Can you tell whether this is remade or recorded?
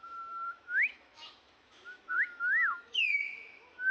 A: remade